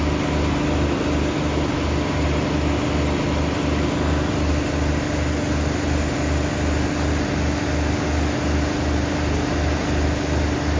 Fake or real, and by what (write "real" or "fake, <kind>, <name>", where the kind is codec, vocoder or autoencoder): real